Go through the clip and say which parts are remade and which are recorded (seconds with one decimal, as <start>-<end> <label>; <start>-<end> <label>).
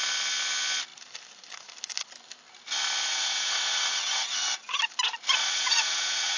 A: 0.0-3.1 recorded; 3.1-4.8 remade; 4.8-5.4 recorded; 5.4-6.4 remade